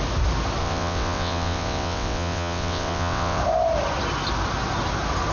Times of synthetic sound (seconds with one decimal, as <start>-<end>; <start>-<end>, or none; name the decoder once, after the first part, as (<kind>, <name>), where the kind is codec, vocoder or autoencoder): 0.6-3.4 (vocoder, WaveNeXt)